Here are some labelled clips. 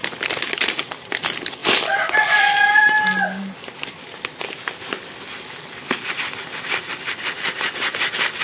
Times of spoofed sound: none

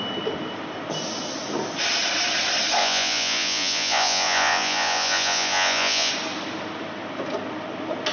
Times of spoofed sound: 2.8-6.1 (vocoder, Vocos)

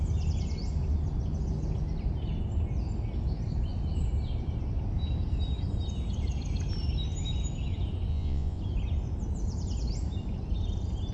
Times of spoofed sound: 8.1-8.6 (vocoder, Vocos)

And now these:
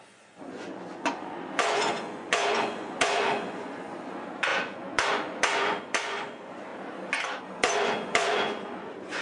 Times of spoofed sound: 0.0-6.7 (vocoder, Vocos); 7.4-9.2

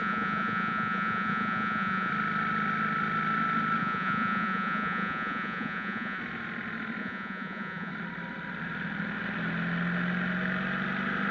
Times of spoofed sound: 0.0-2.1 (vocoder, Vocos); 3.8-6.2; 7.0-7.9

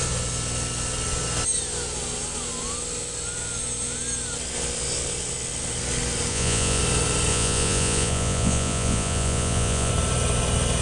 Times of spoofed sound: 6.3-6.8 (vocoder, Vocos); 7.3-9.9

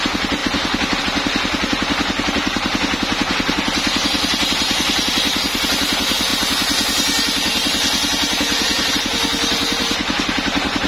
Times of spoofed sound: none

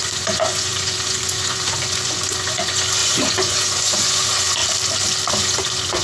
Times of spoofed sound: 0.0-4.6 (vocoder, Vocos); 5.3-6.0